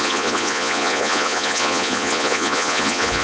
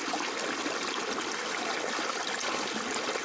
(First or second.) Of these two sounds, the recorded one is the second